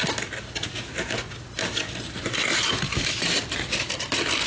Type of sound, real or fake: real